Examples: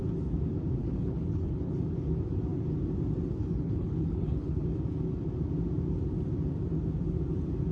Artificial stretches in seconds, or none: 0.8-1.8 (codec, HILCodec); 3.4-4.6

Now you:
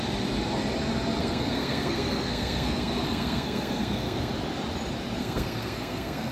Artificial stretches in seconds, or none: 1.2-4.3 (codec, SNAC); 5.2-6.3

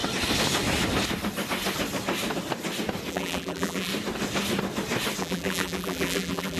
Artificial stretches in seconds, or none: 3.1-3.9 (vocoder, BigVGAN v2); 5.2-6.6

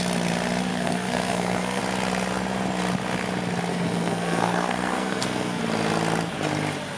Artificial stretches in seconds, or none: 0.7-1.8 (codec, SNAC); 3.7-5.6

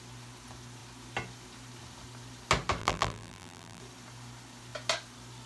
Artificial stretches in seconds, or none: 2.8-3.8 (vocoder, BigVGAN v2)

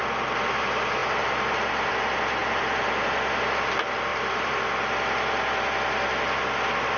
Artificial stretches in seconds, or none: none

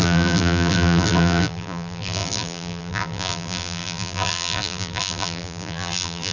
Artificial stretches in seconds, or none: 0.0-6.3 (vocoder, BigVGAN v2)